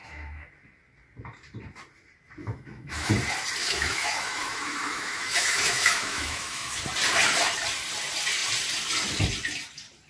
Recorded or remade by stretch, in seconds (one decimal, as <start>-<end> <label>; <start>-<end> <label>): 0.0-0.5 remade; 0.5-2.4 recorded; 2.4-3.1 remade; 3.1-3.6 recorded; 3.6-6.8 remade; 6.8-10.1 recorded